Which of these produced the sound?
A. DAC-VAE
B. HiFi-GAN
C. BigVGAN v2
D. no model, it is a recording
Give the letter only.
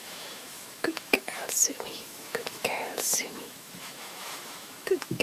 A